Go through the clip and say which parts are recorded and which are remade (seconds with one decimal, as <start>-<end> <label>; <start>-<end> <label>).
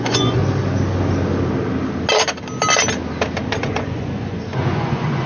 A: 0.0-0.4 remade; 0.4-3.6 recorded; 3.6-5.3 remade